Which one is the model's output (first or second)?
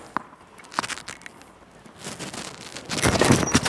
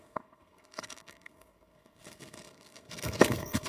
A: second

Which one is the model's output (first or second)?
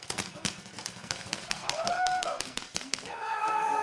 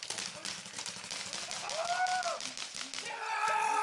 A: first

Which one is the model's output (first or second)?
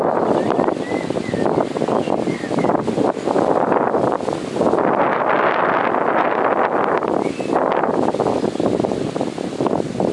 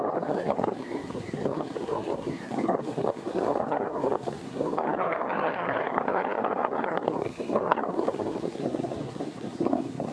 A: second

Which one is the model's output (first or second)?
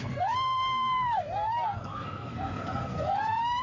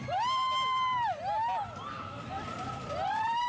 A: first